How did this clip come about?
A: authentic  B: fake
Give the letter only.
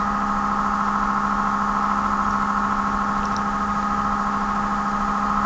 A